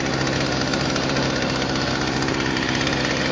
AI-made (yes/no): no